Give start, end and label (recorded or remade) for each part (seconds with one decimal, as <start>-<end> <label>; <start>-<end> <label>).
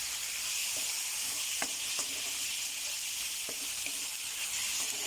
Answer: 0.0-1.0 recorded; 1.0-2.5 remade; 2.5-5.1 recorded